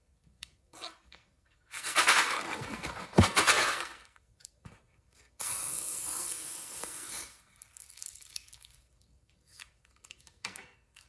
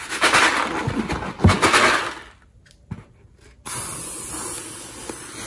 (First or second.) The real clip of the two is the second